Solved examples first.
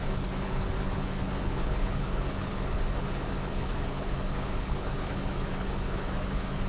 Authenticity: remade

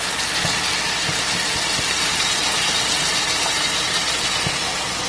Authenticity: recorded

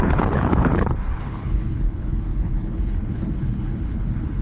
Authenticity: remade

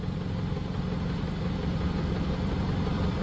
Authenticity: recorded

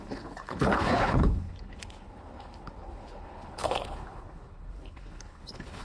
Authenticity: remade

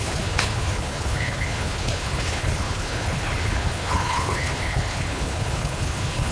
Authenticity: remade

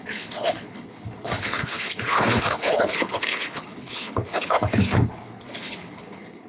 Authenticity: remade